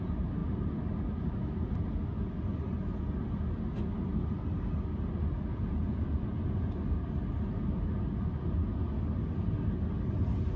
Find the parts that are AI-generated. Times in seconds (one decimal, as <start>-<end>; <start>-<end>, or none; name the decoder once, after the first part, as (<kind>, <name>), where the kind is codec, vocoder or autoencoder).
5.5-6.5 (vocoder, Vocos)